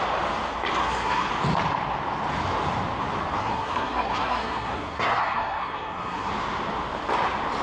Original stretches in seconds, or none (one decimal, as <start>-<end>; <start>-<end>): 0.0-0.8; 1.3-3.4; 6.3-7.6

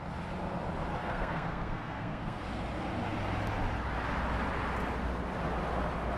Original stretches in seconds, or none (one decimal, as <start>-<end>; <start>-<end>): 0.0-1.0; 2.4-6.2

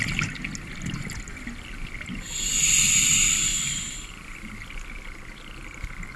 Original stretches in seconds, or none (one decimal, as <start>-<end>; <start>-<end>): 0.0-6.2

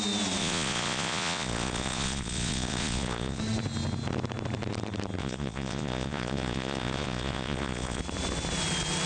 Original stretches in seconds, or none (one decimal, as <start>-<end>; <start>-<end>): 0.0-0.4; 3.4-5.2; 8.0-9.1